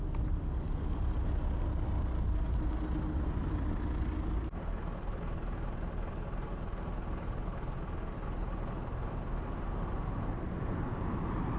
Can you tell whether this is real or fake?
real